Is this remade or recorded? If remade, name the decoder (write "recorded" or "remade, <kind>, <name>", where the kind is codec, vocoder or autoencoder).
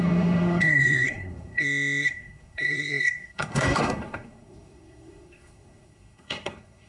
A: remade, codec, SNAC